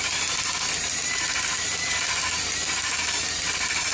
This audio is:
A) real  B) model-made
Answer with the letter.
B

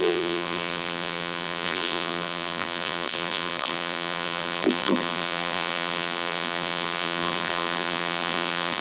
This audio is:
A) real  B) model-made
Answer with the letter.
B